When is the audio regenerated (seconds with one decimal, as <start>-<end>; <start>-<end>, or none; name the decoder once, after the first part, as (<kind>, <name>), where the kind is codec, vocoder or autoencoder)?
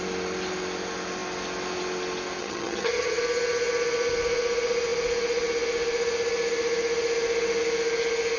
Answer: 2.4-3.2 (vocoder, HiFi-GAN)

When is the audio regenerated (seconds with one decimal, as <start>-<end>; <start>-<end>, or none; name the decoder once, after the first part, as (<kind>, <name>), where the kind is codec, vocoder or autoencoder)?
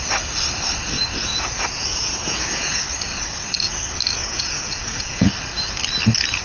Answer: 1.3-2.8 (vocoder, Vocos); 4.2-5.3